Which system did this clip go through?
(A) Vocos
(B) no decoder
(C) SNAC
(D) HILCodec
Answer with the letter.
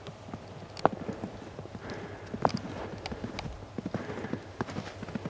B